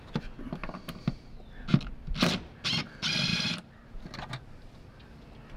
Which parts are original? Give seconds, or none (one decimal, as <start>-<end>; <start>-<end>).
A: 0.0-3.3; 4.0-5.6